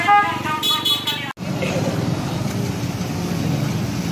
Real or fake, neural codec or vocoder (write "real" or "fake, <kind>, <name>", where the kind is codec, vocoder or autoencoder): real